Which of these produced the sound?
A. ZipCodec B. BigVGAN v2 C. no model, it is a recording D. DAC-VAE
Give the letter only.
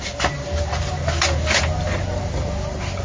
C